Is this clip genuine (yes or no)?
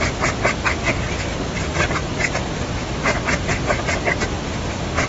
yes